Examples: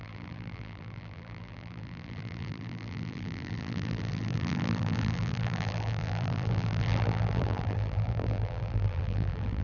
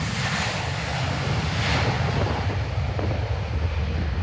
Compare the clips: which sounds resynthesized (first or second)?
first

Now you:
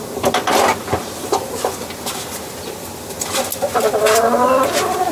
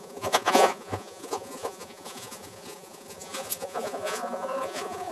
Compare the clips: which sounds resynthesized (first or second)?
second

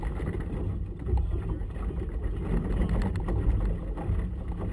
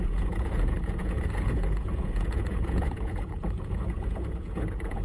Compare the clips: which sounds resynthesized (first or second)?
second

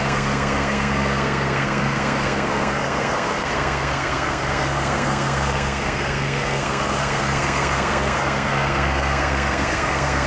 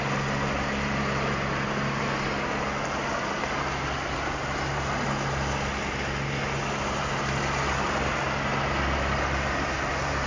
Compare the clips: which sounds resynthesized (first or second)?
first